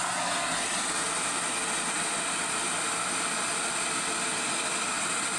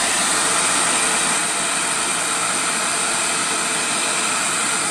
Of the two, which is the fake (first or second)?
second